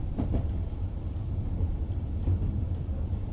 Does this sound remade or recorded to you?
remade